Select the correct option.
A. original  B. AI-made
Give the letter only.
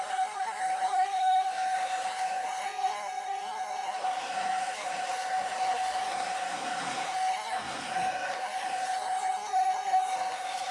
B